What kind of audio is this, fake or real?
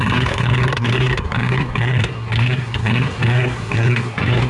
fake